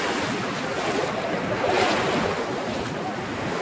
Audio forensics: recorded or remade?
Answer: recorded